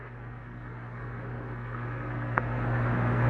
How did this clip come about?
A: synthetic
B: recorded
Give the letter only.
A